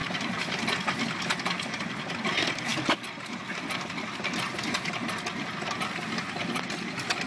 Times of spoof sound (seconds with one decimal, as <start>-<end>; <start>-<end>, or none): none